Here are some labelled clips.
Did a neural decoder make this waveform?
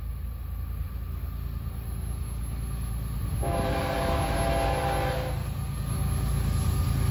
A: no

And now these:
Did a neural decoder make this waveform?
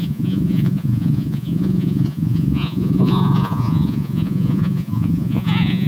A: yes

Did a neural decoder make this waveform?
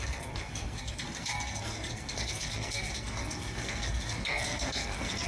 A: yes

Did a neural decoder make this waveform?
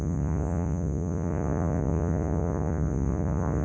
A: yes